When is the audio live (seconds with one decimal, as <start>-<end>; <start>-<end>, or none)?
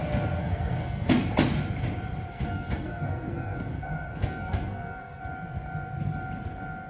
0.0-0.4; 1.1-2.3; 5.2-6.9